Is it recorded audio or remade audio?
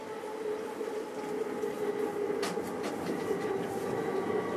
recorded